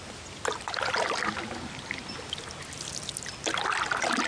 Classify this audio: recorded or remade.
recorded